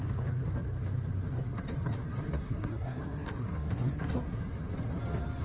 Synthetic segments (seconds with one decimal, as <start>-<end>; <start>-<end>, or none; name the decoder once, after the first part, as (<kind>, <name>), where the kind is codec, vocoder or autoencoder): 2.4-4.4 (codec, SNAC)